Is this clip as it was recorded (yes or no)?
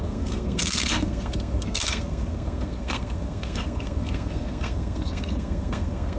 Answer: no